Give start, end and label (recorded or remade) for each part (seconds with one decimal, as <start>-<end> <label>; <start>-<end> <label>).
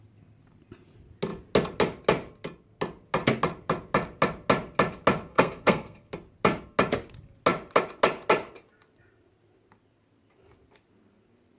0.0-5.3 recorded; 5.3-6.1 remade; 6.1-11.6 recorded